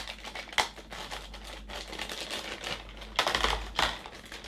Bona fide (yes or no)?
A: yes